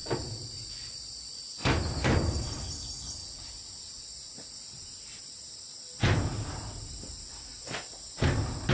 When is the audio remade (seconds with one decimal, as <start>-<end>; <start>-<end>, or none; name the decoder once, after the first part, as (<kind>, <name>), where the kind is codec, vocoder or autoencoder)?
0.0-1.3 (vocoder, BigVGAN v2)